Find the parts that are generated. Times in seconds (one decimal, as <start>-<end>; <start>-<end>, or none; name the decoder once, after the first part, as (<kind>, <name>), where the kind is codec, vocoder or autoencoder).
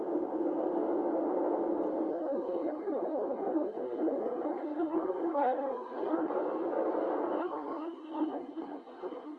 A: 2.1-6.3 (codec, SNAC); 7.4-9.4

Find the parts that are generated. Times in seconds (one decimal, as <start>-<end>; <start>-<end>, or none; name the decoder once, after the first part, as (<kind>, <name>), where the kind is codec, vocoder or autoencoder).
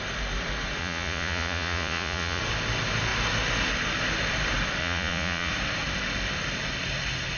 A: 0.8-2.4 (vocoder, Vocos); 4.8-5.5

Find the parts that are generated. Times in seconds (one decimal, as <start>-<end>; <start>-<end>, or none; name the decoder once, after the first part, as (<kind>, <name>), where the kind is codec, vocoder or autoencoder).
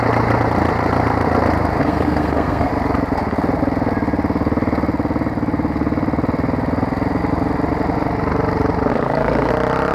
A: 1.8-2.7 (codec, SNAC); 8.9-9.5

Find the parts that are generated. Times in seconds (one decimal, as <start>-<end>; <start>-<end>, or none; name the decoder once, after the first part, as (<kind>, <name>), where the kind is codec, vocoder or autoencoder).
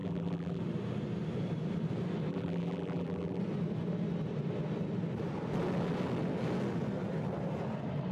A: 0.0-0.6 (vocoder, BigVGAN v2); 2.3-3.4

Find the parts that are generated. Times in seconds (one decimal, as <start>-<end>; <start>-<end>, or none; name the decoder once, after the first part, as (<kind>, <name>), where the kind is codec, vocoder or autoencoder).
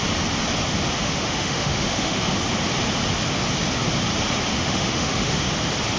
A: 1.0-2.2 (autoencoder, DAC-VAE); 4.5-5.5